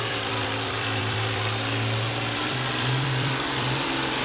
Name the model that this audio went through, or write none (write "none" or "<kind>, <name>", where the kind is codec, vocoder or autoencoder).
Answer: vocoder, BigVGAN v2